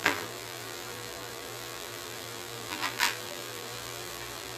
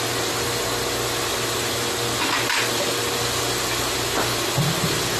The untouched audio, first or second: second